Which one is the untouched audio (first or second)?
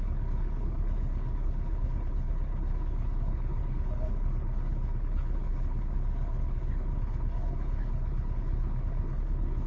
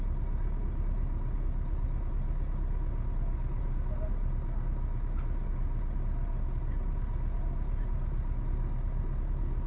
second